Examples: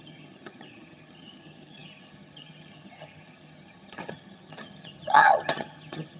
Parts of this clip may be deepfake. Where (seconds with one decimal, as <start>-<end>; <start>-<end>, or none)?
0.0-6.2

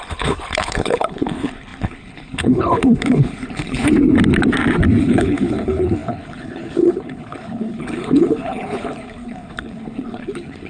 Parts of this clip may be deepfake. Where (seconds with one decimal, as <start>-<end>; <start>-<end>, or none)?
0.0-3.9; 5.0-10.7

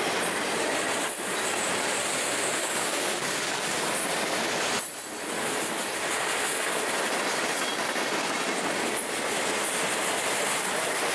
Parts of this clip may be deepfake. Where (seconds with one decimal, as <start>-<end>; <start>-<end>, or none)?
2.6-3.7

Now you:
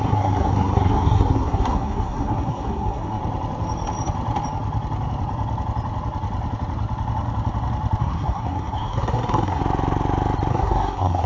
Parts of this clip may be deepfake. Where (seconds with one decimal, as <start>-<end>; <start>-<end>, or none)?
0.0-3.2; 8.0-9.6; 10.5-11.3

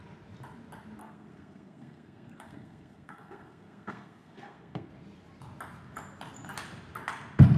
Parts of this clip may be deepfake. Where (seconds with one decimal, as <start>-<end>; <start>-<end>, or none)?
1.0-4.9

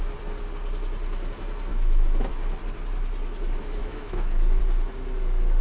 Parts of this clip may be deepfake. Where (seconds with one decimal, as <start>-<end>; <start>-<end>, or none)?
1.7-2.3; 3.8-4.6

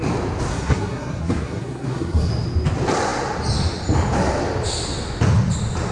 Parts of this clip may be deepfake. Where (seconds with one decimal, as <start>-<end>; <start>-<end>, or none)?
0.5-2.3